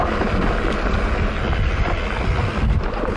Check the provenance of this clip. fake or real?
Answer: real